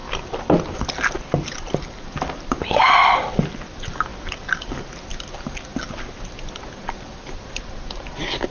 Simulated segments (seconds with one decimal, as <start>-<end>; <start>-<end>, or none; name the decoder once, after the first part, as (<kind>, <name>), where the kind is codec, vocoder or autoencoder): none